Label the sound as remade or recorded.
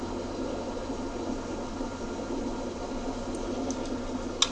recorded